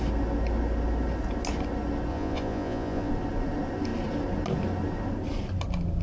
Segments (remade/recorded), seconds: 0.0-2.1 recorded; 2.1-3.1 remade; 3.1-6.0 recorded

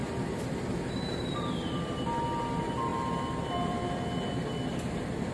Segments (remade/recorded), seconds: 0.0-0.7 remade; 0.7-2.9 recorded; 2.9-4.4 remade; 4.4-5.3 recorded

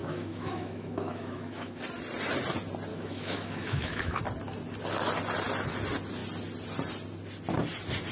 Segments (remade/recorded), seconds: 0.0-1.8 remade; 1.8-2.9 recorded; 2.9-4.2 remade; 4.2-8.1 recorded

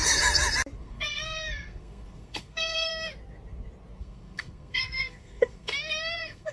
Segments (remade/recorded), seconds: 0.0-0.8 recorded; 0.8-2.9 remade; 2.9-4.0 recorded; 4.0-6.5 remade

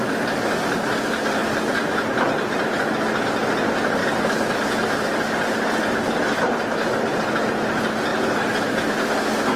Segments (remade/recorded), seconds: 0.0-9.6 recorded

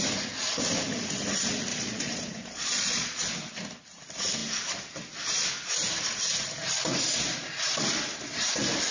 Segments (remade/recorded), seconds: 0.0-1.7 recorded; 1.7-3.2 remade; 3.2-8.9 recorded